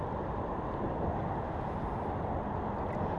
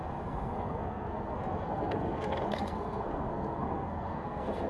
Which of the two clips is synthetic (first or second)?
second